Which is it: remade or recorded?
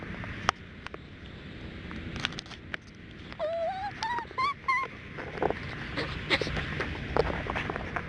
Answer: recorded